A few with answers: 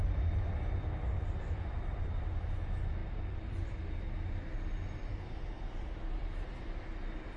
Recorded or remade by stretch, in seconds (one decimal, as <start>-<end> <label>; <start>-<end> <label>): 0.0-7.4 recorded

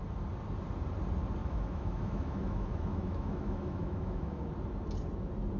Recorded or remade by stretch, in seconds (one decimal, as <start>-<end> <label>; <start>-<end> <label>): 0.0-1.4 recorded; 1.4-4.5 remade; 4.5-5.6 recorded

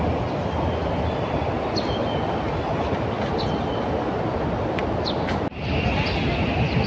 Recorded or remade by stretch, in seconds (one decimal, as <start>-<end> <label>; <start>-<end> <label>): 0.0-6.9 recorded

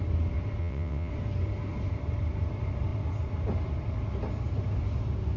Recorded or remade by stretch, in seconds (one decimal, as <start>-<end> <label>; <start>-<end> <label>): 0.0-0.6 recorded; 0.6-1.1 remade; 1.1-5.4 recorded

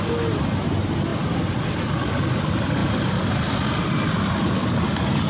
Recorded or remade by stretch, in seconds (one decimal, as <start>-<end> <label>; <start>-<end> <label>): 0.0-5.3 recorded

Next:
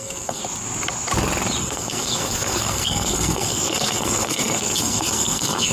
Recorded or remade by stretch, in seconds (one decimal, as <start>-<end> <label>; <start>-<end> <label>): 0.0-0.4 remade; 0.4-1.6 recorded; 1.6-5.7 remade

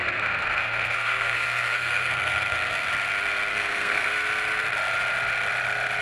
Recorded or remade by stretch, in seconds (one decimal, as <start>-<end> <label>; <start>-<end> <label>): 0.0-2.9 remade; 2.9-3.5 recorded; 3.5-4.1 remade; 4.1-6.0 recorded